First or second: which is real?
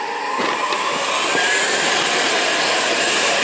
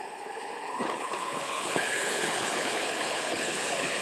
first